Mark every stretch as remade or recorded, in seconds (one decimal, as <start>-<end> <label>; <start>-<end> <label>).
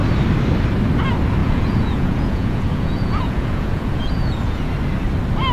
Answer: 0.0-1.4 recorded; 1.4-4.7 remade; 4.7-5.5 recorded